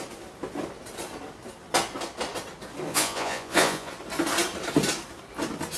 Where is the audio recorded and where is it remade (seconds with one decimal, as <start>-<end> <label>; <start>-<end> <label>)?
0.0-2.9 recorded; 2.9-3.9 remade; 3.9-5.8 recorded